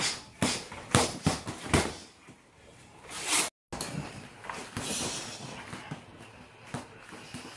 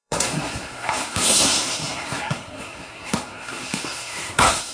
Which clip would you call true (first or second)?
first